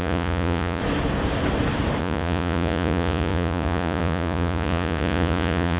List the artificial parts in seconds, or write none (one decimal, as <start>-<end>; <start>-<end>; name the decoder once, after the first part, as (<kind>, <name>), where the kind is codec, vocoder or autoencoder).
0.0-0.8 (vocoder, Vocos); 2.0-5.8